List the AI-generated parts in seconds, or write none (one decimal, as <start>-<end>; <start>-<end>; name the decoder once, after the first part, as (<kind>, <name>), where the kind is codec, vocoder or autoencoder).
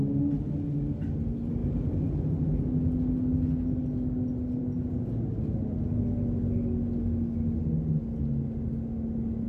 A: none